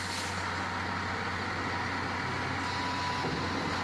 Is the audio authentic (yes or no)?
yes